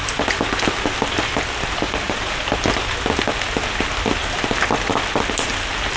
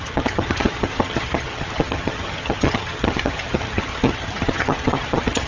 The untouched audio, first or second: first